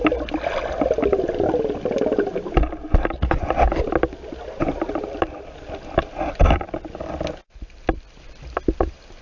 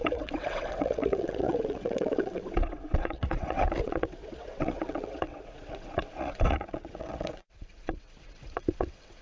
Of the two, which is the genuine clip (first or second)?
first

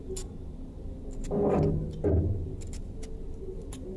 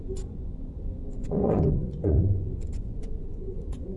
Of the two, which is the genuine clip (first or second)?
first